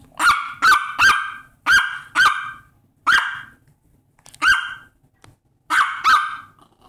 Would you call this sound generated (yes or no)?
no